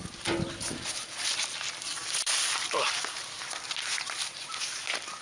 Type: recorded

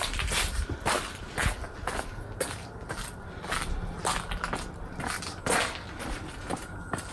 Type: recorded